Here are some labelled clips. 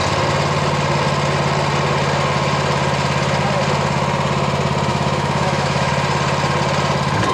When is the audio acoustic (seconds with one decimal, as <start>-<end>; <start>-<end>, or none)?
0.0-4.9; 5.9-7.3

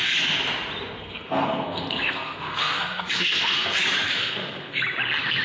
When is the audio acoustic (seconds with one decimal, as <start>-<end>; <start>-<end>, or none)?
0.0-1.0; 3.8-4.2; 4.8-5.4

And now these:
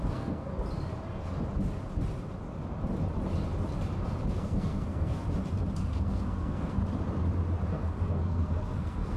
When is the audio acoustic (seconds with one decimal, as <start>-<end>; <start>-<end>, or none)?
0.5-4.3; 5.2-5.8; 6.8-7.7

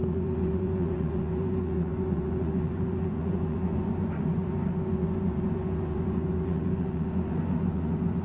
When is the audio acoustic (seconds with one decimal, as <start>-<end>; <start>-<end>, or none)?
none

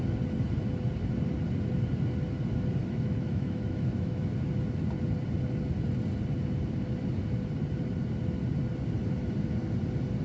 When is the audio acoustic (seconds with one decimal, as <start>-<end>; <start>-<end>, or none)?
0.0-2.8; 4.2-10.2